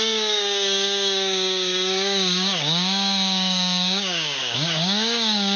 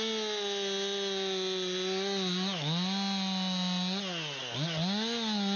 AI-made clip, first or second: first